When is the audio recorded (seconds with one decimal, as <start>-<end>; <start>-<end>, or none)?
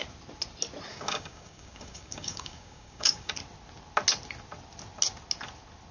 0.0-0.9; 3.3-5.9